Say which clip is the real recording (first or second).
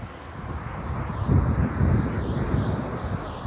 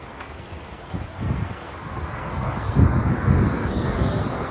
first